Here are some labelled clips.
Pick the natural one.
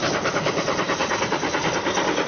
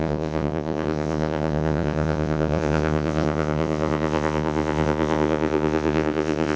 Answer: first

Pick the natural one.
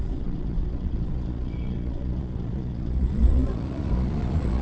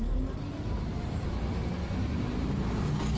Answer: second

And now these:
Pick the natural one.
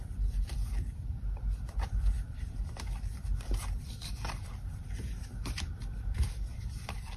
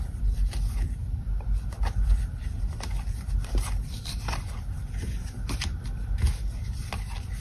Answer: second